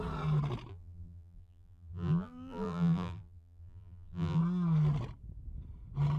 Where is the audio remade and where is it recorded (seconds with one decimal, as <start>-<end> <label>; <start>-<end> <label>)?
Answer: 0.0-0.7 recorded; 0.7-4.4 remade; 4.4-6.2 recorded